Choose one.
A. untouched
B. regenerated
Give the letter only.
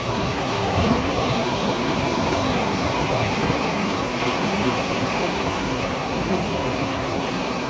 B